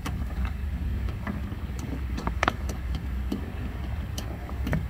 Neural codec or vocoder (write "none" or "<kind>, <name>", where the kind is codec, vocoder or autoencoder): codec, DAC